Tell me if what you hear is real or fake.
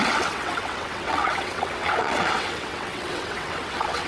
fake